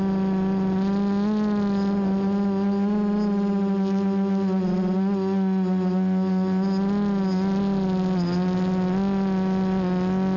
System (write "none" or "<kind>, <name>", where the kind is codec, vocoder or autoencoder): none